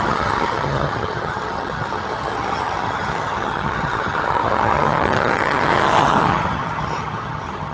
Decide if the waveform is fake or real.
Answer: fake